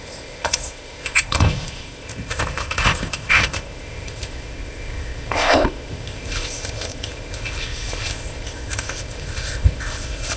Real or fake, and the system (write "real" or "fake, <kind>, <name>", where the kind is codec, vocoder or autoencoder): fake, codec, ZipCodec